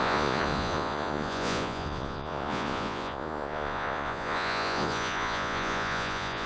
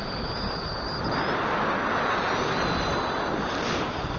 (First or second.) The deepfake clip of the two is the first